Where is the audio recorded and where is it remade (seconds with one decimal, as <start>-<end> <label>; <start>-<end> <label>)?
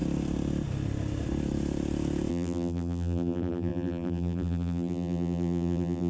0.0-2.3 recorded; 2.3-6.1 remade